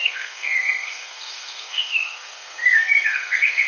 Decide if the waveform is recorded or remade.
remade